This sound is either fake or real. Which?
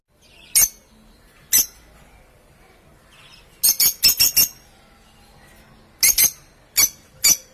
real